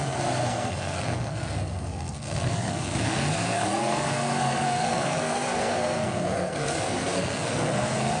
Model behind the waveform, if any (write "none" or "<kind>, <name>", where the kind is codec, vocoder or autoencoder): codec, SNAC